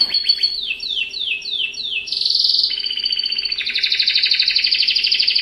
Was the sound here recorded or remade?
recorded